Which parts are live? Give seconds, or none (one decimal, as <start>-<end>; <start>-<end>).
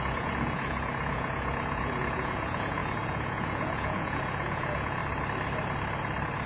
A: 5.0-6.5